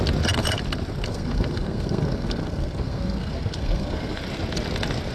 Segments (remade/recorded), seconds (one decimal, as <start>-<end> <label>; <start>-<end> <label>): 0.0-1.1 recorded; 1.1-4.2 remade; 4.2-5.1 recorded